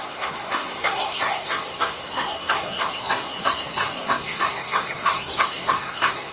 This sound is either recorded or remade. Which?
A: remade